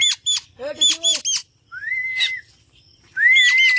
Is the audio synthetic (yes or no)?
no